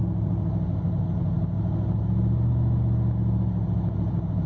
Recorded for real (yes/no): yes